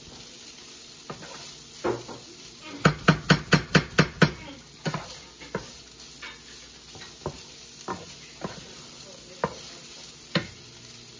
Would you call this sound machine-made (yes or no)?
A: no